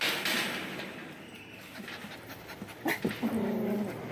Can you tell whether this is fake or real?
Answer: real